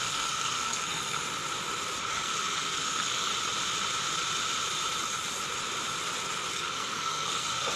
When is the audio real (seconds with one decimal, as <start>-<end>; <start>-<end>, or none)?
1.2-2.1; 3.3-6.5